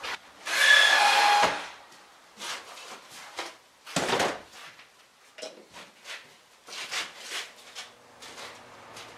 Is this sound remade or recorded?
recorded